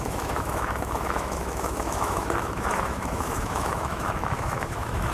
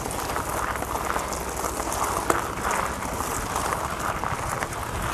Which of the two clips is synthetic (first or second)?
first